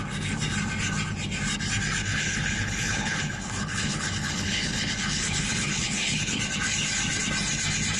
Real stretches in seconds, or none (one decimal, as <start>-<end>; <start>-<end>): 0.0-2.0; 6.4-8.0